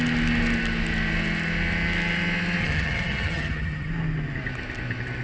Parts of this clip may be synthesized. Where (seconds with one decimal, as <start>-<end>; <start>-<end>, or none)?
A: 2.6-3.9